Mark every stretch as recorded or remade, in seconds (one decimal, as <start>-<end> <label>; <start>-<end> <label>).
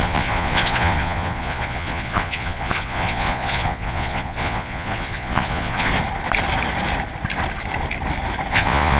0.0-5.9 remade; 5.9-8.5 recorded; 8.5-9.0 remade